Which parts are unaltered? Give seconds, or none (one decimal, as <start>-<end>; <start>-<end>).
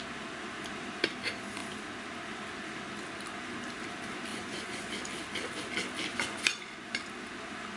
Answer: 0.0-4.3; 4.9-6.1; 7.0-7.8